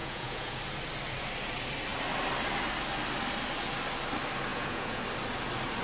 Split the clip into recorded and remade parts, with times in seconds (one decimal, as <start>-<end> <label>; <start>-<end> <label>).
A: 0.0-0.6 remade; 0.6-4.5 recorded; 4.5-5.0 remade; 5.0-5.8 recorded